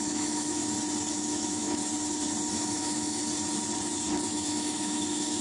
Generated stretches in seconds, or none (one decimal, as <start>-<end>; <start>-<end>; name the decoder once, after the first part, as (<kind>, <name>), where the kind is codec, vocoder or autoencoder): 0.0-0.6 (autoencoder, DAC-VAE); 1.1-1.8; 2.5-3.2; 4.3-5.4